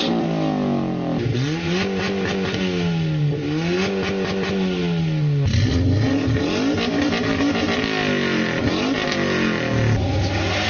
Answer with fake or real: real